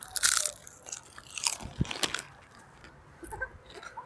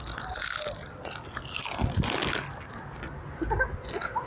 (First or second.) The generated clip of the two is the first